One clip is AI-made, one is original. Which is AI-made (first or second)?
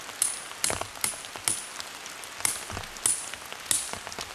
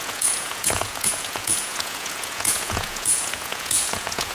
second